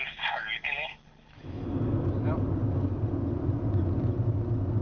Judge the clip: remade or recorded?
recorded